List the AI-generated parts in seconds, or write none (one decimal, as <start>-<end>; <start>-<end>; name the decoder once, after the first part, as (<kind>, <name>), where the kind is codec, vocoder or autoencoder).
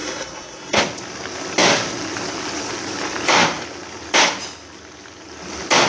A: 0.0-0.8 (codec, SNAC)